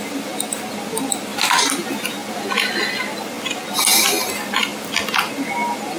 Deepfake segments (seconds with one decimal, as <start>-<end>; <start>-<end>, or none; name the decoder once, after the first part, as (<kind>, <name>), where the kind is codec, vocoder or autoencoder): none